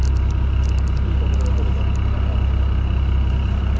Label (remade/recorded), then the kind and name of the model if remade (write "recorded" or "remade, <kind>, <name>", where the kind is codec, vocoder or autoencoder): recorded